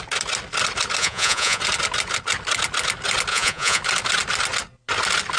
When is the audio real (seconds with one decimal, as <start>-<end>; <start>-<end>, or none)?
0.0-1.0; 1.6-3.3; 3.8-5.4